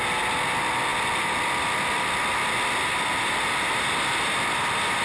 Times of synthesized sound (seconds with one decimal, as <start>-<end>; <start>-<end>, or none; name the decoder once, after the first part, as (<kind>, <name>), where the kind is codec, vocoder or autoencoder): none